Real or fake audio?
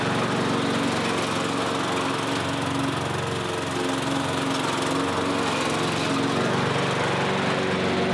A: real